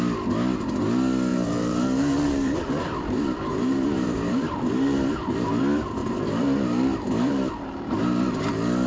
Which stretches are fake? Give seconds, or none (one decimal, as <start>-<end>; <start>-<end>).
1.3-2.7; 3.5-5.6; 6.0-8.5

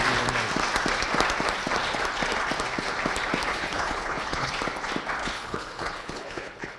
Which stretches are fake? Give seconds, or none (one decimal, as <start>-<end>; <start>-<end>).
3.5-4.5; 5.2-6.8

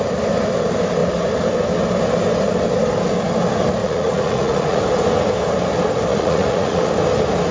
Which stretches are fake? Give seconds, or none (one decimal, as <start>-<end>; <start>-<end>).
3.8-4.8; 6.1-6.9

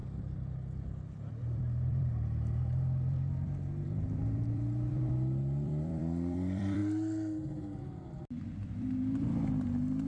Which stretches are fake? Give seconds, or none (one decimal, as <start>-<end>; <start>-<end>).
0.0-6.8; 8.4-10.1

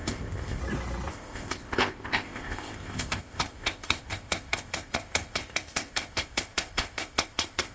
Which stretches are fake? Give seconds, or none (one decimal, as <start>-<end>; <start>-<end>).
0.0-0.6; 1.1-7.7

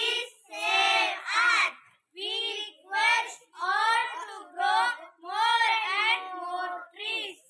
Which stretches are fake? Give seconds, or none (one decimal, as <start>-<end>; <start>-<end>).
none

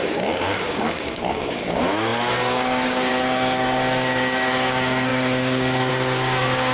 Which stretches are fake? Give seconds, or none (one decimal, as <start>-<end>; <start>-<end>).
0.0-6.7

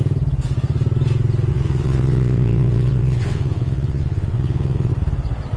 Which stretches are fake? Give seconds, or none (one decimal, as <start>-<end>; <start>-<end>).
1.5-4.9